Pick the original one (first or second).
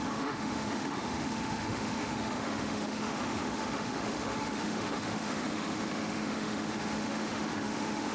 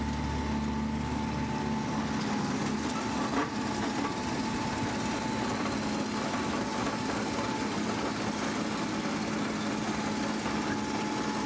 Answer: second